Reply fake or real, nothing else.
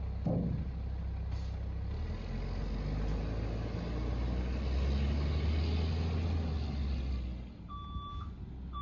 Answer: real